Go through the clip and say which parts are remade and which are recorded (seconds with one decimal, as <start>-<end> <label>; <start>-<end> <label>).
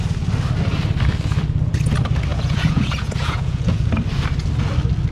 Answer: 0.0-2.3 recorded; 2.3-3.9 remade; 3.9-5.1 recorded